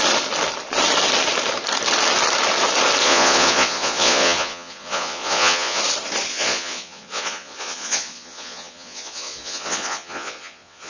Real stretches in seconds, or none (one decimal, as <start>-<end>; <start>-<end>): 0.0-3.0; 5.8-6.3